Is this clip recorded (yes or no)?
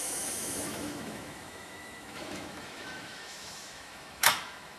no